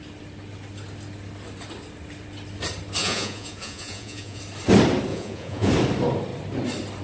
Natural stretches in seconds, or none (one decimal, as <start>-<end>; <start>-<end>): 0.0-3.0; 4.4-5.1; 5.7-7.0